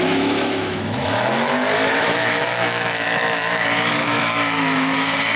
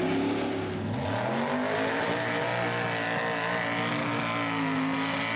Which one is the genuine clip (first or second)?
second